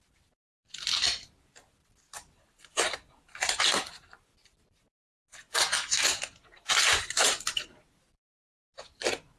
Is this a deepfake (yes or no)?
no